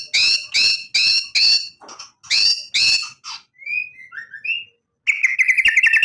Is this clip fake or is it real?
real